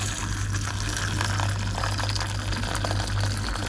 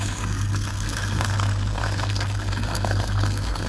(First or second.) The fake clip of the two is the second